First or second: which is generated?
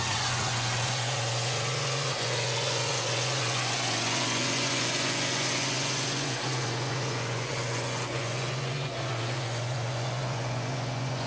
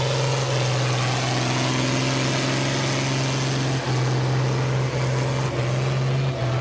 first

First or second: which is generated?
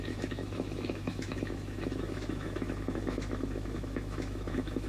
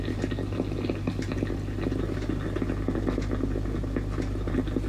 first